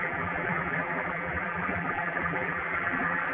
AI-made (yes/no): yes